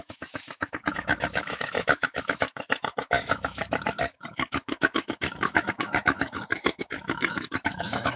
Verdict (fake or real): fake